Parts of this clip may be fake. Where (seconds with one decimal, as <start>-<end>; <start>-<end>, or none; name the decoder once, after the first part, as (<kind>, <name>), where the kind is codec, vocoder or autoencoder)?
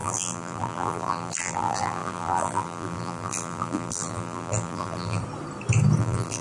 0.0-5.2 (vocoder, BigVGAN v2); 6.0-6.4